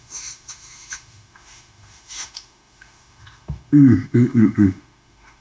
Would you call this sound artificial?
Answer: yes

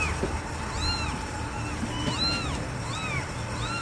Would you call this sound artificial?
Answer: no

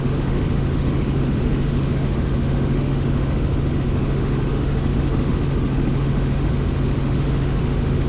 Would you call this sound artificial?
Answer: yes